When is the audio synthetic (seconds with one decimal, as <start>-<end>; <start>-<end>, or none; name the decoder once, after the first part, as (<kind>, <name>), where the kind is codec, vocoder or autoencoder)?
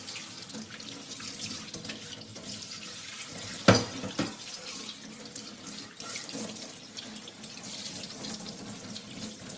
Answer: 2.3-4.0 (vocoder, BigVGAN v2); 5.5-6.8